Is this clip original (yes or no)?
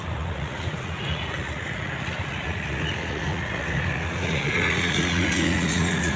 no